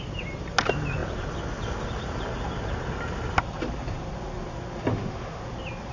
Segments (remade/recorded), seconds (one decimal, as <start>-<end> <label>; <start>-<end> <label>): 0.0-4.9 recorded; 4.9-5.4 remade; 5.4-5.9 recorded